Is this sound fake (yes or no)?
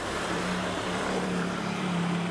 yes